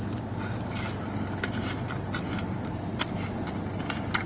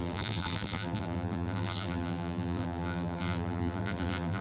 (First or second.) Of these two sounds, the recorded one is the first